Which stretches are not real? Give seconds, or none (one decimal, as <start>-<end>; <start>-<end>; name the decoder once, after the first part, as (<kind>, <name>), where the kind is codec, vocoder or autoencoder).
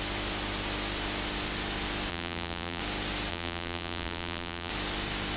2.1-2.8 (vocoder, BigVGAN v2); 3.3-4.7